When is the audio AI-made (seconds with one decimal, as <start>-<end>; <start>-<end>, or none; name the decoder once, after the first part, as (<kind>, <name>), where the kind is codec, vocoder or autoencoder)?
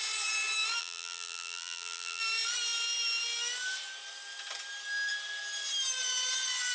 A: 0.8-2.2 (vocoder, BigVGAN v2)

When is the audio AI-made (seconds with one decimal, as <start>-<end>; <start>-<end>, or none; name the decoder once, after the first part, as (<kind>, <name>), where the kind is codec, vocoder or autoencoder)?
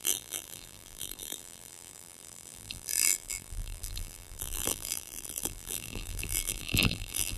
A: 0.0-7.4 (vocoder, BigVGAN v2)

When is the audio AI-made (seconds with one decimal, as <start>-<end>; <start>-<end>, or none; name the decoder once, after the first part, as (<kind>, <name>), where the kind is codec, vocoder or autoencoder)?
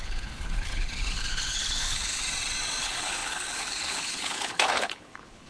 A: 0.0-2.2 (codec, HILCodec); 2.8-5.5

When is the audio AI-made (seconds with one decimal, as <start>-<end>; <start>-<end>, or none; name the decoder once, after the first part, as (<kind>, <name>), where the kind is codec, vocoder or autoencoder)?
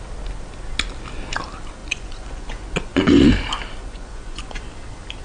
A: 1.8-3.3 (vocoder, Vocos); 3.8-4.6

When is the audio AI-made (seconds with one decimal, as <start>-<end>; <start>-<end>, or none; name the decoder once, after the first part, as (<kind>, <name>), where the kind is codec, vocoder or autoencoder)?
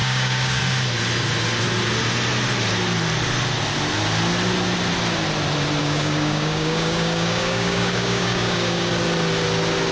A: 0.0-0.6 (codec, DAC); 5.8-8.9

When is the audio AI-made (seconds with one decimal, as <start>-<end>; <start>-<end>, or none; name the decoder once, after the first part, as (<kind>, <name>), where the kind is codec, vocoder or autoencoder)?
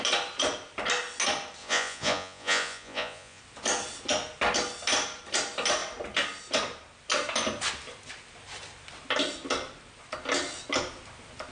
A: 1.6-3.4 (vocoder, Vocos)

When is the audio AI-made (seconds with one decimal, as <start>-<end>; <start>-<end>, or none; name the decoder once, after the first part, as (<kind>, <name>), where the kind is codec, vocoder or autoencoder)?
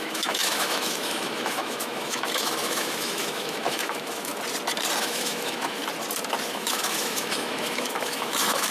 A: 0.0-4.3 (autoencoder, DAC-VAE); 5.0-5.8; 6.5-8.7